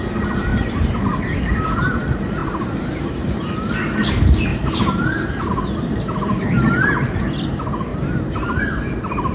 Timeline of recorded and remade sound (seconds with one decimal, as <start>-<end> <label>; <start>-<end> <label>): 0.0-0.5 recorded; 0.5-1.0 remade; 1.0-2.4 recorded; 2.4-3.1 remade; 3.1-4.5 recorded; 4.5-5.5 remade; 5.5-7.9 recorded; 7.9-8.6 remade; 8.6-9.3 recorded